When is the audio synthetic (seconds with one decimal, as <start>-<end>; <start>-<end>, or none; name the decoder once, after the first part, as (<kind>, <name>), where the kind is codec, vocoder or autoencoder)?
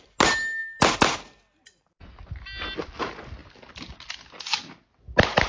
none